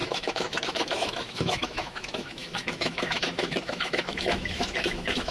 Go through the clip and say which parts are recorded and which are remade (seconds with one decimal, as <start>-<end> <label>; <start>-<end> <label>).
0.0-5.3 remade